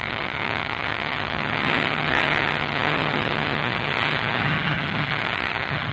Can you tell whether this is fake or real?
fake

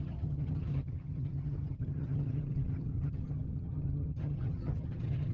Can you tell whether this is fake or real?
fake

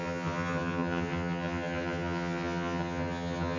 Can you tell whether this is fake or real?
fake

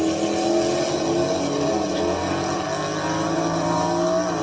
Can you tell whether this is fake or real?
real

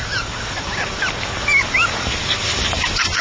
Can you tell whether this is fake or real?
real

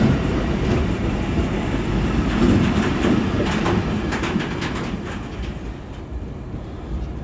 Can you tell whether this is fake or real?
real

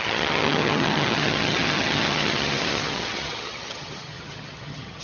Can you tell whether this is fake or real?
fake